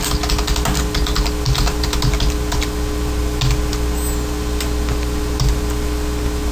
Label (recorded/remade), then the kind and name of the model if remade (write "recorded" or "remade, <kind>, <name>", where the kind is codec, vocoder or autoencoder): recorded